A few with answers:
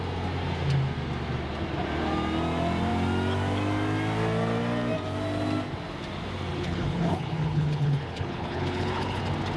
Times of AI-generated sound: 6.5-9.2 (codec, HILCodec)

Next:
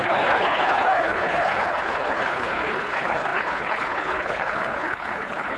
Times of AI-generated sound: 0.0-5.6 (codec, HILCodec)

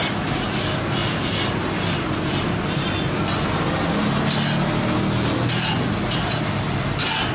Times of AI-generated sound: none

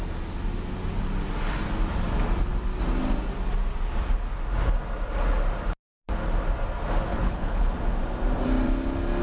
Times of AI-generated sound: 7.1-7.7 (codec, HILCodec)

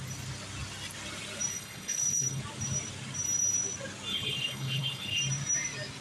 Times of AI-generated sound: 1.5-2.4 (codec, HILCodec); 4.1-5.2

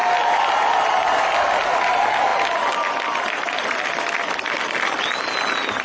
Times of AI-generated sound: none

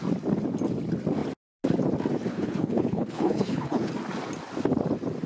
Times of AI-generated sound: 2.3-3.9 (codec, HILCodec)

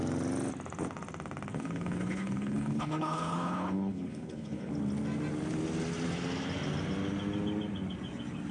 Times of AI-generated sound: 1.5-4.7 (codec, HILCodec)